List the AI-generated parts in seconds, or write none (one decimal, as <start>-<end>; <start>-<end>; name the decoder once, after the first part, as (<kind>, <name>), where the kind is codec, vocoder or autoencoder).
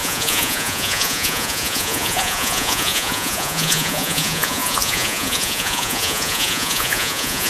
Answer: 0.0-7.5 (vocoder, Vocos)